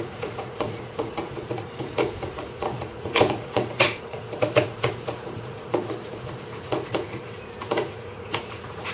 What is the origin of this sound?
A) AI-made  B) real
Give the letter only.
A